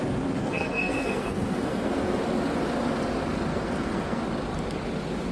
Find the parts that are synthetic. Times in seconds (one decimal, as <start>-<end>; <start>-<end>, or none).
0.4-2.2; 3.5-4.2